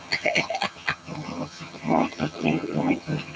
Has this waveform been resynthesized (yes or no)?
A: yes